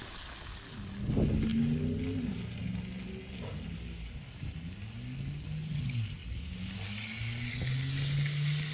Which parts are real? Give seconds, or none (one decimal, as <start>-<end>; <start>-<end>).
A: 0.0-8.7